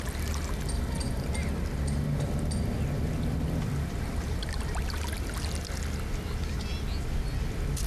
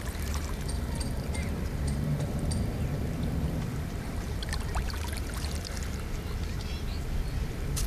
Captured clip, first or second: first